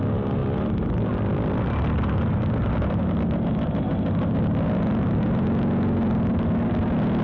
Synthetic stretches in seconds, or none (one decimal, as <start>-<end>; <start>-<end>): none